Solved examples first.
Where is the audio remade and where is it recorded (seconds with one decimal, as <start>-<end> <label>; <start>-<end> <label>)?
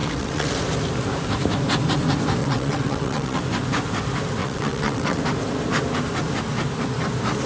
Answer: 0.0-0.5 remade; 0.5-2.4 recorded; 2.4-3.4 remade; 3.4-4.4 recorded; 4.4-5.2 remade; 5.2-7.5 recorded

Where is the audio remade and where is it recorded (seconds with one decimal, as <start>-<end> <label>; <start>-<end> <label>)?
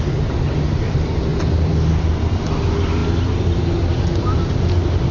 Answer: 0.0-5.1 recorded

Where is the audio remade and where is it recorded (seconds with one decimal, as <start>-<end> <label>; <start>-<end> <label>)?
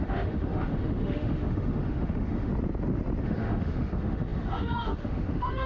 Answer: 0.0-2.5 remade; 2.5-3.2 recorded; 3.2-5.7 remade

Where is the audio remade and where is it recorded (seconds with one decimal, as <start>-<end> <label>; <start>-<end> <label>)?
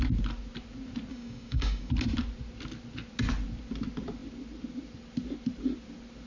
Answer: 0.0-1.1 recorded; 1.1-1.9 remade; 1.9-6.3 recorded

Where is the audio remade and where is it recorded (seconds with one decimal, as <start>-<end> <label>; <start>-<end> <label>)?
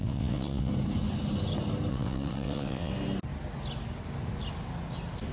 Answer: 0.0-0.7 remade; 0.7-1.9 recorded; 1.9-2.9 remade; 2.9-5.3 recorded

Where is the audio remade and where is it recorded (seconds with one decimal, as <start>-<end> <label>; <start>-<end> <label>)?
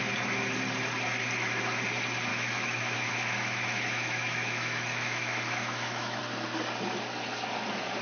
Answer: 0.0-2.3 recorded; 2.3-6.2 remade; 6.2-8.0 recorded